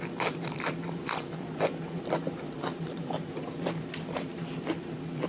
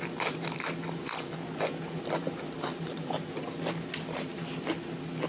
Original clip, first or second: second